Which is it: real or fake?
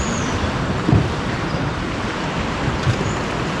real